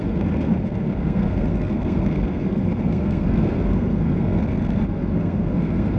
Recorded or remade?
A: remade